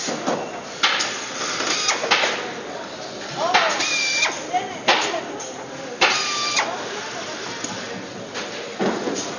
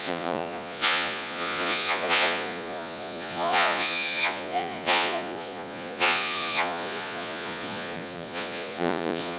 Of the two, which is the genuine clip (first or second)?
first